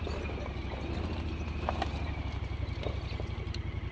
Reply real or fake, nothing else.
real